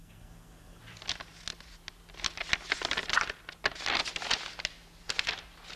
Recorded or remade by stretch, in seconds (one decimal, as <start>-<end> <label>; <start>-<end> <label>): 0.0-0.8 remade; 0.8-5.8 recorded